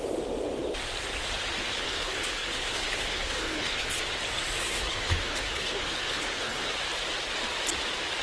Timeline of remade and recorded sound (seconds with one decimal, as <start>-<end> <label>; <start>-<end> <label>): 0.0-1.7 recorded; 1.7-4.0 remade; 4.0-4.6 recorded; 4.6-6.7 remade; 6.7-8.2 recorded